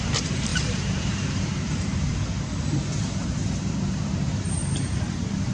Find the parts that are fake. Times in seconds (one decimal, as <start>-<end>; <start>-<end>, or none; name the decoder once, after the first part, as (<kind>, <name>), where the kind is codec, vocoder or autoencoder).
0.0-2.1 (vocoder, BigVGAN v2); 3.0-5.5